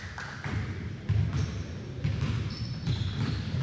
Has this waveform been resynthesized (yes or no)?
no